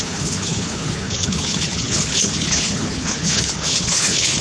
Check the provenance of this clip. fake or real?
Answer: fake